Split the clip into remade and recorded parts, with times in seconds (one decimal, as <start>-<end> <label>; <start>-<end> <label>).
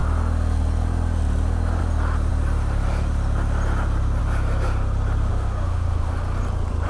0.0-5.3 recorded; 5.3-6.1 remade; 6.1-6.9 recorded